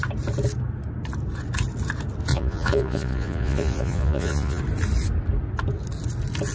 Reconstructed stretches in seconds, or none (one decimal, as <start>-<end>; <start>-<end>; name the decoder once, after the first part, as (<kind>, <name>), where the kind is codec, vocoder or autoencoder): 2.3-4.6 (vocoder, Vocos)

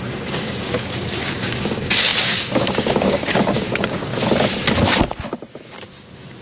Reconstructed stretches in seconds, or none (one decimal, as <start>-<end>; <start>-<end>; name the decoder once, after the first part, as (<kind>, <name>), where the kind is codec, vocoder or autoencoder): 0.0-4.1 (codec, DAC); 6.0-6.4

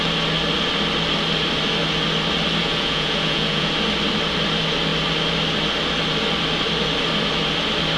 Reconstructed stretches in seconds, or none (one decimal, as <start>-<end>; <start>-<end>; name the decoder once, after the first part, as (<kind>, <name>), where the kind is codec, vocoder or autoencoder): 2.6-3.7 (vocoder, Vocos)

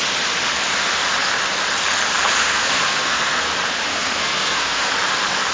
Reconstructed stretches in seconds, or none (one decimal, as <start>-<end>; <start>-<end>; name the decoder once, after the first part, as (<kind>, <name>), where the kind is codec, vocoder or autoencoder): 2.4-3.5 (codec, SNAC); 3.9-4.9